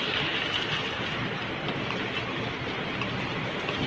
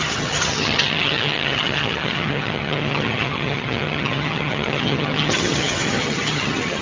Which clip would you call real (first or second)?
first